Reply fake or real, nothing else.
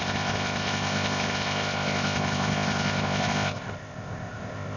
fake